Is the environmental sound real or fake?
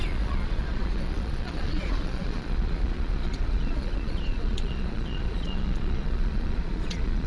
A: fake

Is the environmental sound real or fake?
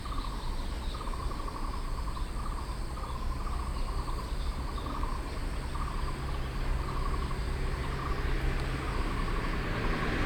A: real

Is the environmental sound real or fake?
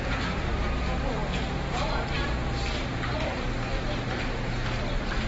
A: real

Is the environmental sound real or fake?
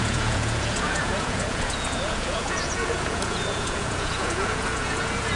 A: fake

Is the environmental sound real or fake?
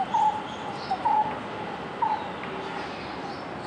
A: real